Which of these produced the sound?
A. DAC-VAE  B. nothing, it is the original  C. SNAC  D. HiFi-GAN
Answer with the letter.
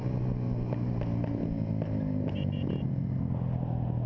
B